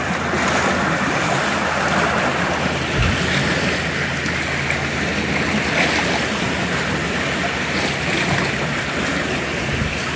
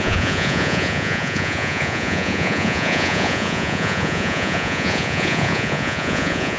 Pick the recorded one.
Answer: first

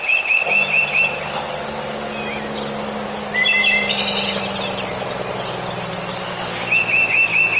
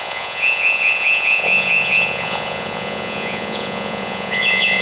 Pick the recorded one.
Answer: first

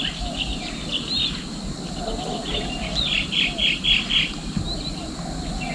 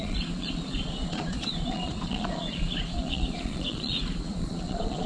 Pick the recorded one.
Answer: first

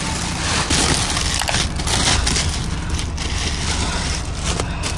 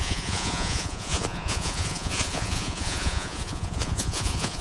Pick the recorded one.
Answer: first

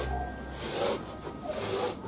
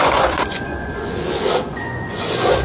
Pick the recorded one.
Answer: first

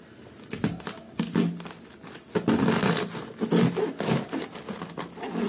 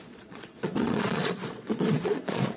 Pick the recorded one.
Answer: first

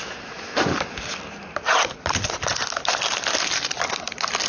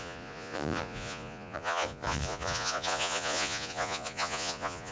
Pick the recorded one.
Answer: first